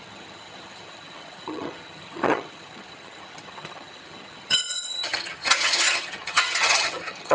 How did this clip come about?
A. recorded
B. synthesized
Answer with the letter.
B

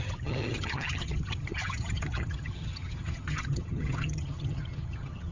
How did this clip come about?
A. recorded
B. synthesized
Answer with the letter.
B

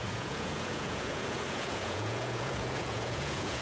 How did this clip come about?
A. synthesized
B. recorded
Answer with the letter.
A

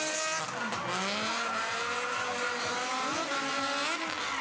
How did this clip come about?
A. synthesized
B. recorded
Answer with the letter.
B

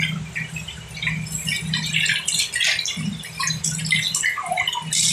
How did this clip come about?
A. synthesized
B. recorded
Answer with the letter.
B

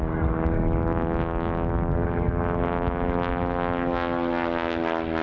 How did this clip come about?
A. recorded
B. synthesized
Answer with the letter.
A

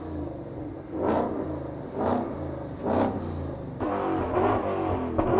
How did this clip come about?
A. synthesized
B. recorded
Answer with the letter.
B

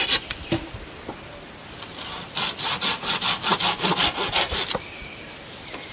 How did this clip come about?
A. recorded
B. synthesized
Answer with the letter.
A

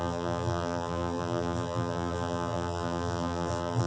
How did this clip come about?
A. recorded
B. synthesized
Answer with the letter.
B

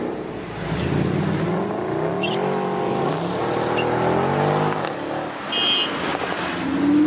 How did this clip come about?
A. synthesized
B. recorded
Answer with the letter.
B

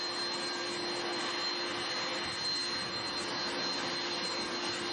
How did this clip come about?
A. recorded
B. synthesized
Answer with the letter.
A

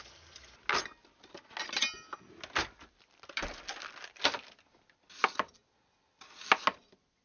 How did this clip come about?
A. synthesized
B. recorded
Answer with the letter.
B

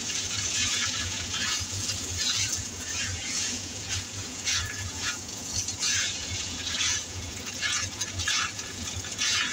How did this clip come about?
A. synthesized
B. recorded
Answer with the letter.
A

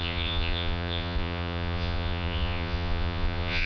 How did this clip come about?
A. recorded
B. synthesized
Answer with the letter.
B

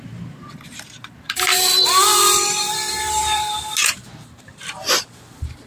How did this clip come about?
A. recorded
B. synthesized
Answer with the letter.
B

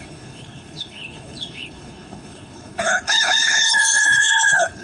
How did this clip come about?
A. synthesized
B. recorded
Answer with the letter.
A